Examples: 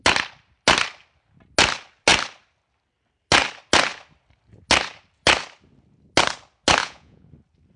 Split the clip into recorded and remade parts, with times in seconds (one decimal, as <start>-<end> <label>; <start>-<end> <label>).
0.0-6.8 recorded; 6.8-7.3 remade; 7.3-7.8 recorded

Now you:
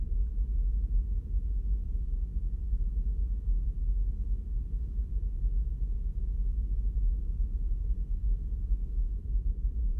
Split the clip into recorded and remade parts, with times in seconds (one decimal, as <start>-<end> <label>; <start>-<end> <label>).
0.0-10.0 recorded

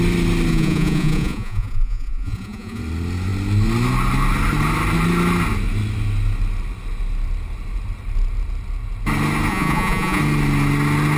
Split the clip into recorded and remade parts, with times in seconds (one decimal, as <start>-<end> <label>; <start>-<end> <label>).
0.0-0.5 recorded; 0.5-2.8 remade; 2.8-9.5 recorded; 9.5-10.2 remade; 10.2-11.2 recorded

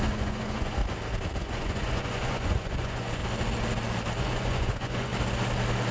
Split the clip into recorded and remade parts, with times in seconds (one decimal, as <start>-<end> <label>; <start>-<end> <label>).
0.0-0.8 remade; 0.8-1.4 recorded; 1.4-3.2 remade; 3.2-4.2 recorded; 4.2-5.1 remade; 5.1-5.9 recorded

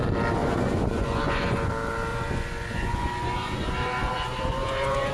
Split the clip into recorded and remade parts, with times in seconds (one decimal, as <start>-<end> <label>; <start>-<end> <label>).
0.0-0.4 recorded; 0.4-1.7 remade; 1.7-2.1 recorded; 2.1-5.1 remade

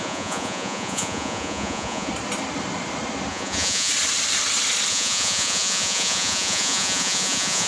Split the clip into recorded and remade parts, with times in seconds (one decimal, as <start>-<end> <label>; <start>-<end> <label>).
0.0-2.1 remade; 2.1-3.3 recorded; 3.3-3.9 remade; 3.9-4.9 recorded; 4.9-7.7 remade

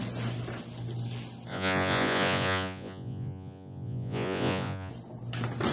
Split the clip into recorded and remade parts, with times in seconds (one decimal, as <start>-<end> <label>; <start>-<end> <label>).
0.0-1.5 recorded; 1.5-4.9 remade; 4.9-5.7 recorded

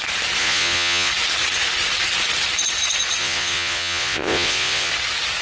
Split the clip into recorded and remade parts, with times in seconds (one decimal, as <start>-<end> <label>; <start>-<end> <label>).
0.0-0.4 recorded; 0.4-1.1 remade; 1.1-3.2 recorded; 3.2-4.9 remade; 4.9-5.4 recorded